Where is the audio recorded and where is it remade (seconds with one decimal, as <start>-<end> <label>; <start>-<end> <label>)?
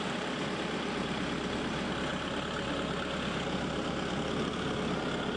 0.0-5.4 recorded